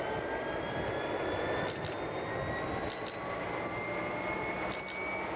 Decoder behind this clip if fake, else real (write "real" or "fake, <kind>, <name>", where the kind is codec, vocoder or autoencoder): real